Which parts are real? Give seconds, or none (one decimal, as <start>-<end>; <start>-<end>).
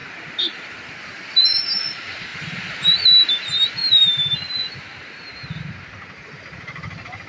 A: 0.9-2.3; 3.3-3.8; 5.7-7.3